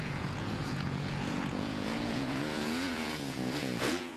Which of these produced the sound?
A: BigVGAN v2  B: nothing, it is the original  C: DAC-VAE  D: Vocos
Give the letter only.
D